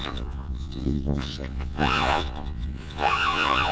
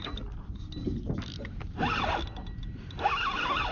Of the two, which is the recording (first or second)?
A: second